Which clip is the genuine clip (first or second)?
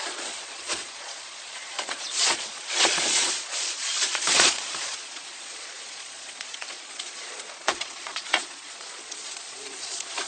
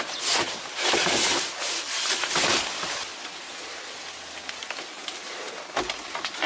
second